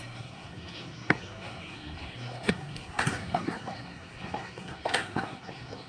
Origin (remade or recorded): remade